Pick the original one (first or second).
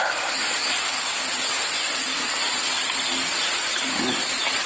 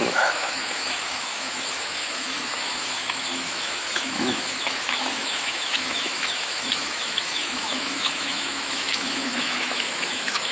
first